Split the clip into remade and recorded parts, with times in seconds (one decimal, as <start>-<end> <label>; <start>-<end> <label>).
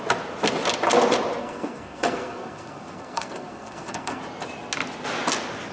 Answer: 0.0-1.4 recorded; 1.4-4.2 remade; 4.2-5.7 recorded